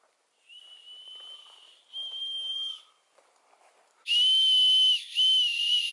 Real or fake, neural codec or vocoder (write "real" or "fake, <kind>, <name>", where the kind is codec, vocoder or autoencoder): real